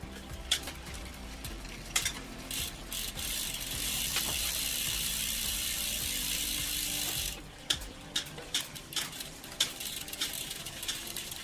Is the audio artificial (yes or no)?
yes